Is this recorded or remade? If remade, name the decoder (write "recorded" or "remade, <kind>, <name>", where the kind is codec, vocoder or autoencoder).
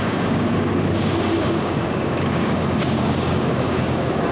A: remade, codec, DAC